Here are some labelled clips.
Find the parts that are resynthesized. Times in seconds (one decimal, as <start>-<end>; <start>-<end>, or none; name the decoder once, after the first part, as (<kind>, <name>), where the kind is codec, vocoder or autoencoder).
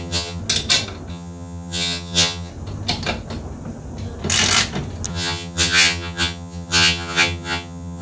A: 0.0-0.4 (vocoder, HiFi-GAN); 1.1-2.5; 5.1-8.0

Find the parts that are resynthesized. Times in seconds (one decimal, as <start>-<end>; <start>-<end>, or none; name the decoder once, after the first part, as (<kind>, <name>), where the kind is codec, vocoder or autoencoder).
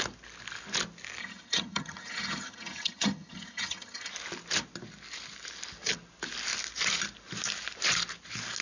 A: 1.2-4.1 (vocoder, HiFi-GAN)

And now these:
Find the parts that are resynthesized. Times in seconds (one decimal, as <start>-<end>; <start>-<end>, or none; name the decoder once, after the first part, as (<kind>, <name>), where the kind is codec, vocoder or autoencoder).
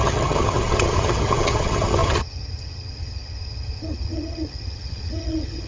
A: 0.0-5.7 (vocoder, HiFi-GAN)